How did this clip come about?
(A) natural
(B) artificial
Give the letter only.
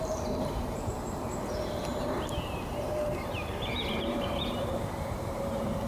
B